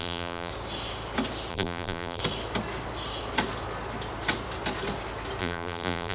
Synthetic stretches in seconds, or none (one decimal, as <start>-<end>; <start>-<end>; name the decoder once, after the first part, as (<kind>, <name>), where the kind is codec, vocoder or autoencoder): 0.0-0.5 (vocoder, BigVGAN v2); 1.5-2.2; 5.4-6.1